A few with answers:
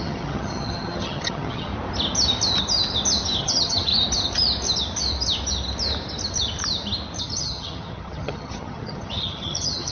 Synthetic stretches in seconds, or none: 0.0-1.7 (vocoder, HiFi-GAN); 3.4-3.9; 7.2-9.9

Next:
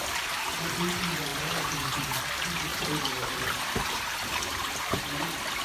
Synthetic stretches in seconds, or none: 1.3-2.2 (vocoder, BigVGAN v2); 2.7-5.1

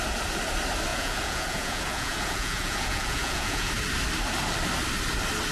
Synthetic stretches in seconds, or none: 0.9-3.7 (vocoder, Vocos)

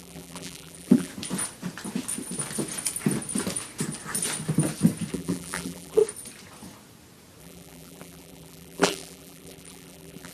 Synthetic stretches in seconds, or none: 0.0-1.1 (vocoder, BigVGAN v2); 5.1-6.0; 7.4-10.3

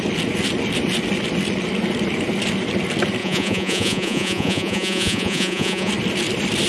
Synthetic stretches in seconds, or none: 3.2-5.9 (vocoder, Vocos)